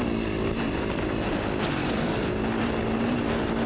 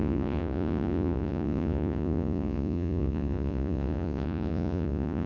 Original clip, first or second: first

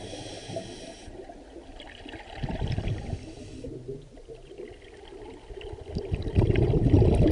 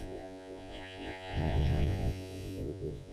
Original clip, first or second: first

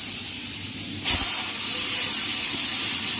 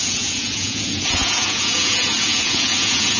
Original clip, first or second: first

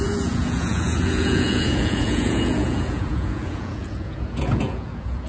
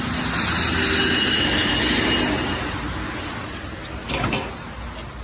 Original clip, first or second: second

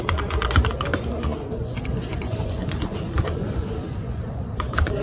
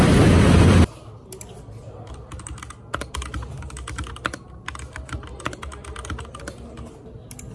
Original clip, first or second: second